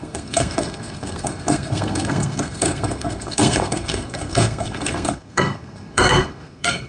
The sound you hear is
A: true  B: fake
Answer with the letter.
B